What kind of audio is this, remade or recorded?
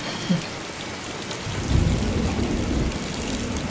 recorded